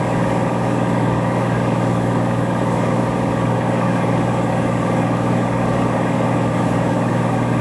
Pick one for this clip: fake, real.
fake